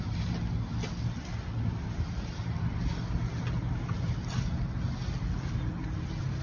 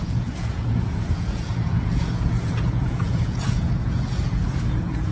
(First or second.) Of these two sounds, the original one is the first